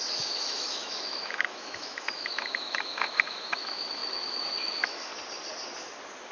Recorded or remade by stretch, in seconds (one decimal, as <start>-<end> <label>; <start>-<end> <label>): 0.0-5.1 remade; 5.1-6.3 recorded